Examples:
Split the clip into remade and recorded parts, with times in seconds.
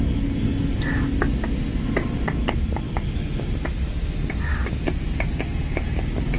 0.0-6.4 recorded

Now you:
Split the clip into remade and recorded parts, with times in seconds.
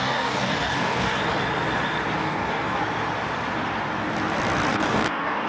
0.0-1.2 remade; 1.2-2.2 recorded; 2.2-2.8 remade; 2.8-4.7 recorded; 4.7-5.5 remade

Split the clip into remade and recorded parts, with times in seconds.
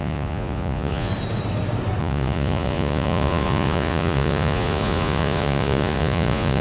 0.0-1.1 remade; 1.1-2.0 recorded; 2.0-6.6 remade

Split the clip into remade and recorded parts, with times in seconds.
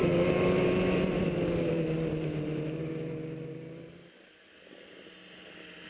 0.0-5.9 recorded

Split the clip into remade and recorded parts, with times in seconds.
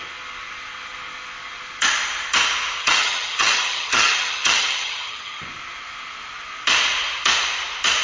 0.0-2.8 recorded; 2.8-5.4 remade; 5.4-8.0 recorded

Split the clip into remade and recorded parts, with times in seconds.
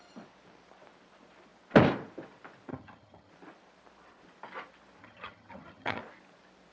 0.0-2.7 recorded; 2.7-3.3 remade; 3.3-5.0 recorded; 5.0-6.0 remade; 6.0-6.7 recorded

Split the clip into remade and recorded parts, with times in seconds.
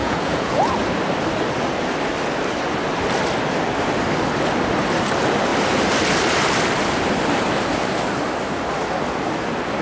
0.0-0.7 remade; 0.7-9.8 recorded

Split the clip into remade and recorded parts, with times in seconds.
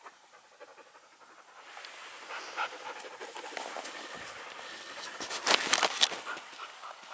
0.0-7.1 recorded